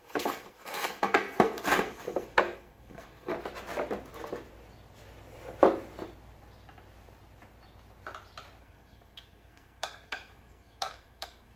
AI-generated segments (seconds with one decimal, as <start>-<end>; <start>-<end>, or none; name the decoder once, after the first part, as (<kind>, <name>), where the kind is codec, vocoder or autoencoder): 0.0-3.3 (codec, SNAC); 8.6-11.6